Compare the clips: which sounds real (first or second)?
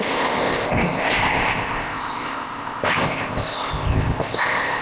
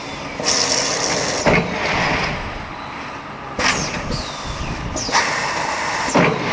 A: second